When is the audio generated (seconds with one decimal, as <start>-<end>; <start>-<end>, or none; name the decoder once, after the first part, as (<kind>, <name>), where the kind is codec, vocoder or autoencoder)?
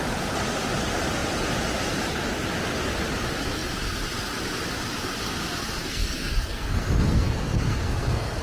5.8-8.4 (codec, SNAC)